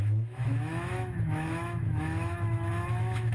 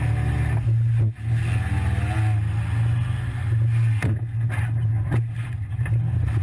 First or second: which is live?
second